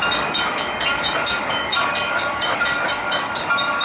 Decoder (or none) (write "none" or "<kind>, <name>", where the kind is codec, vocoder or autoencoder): codec, DAC